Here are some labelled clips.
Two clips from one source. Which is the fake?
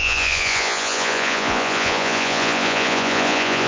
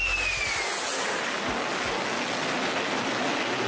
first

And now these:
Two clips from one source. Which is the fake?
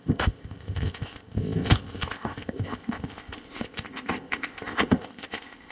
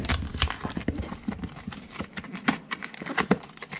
first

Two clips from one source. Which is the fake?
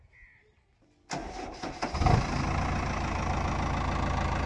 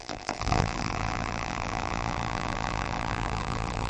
second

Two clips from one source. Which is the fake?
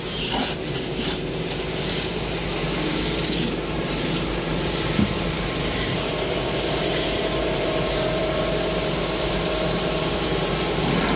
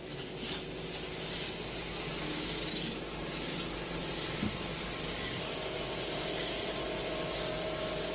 first